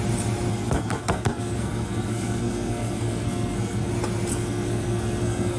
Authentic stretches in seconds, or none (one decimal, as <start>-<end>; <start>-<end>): 0.0-0.5; 3.9-4.3